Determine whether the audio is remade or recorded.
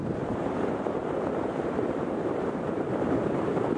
remade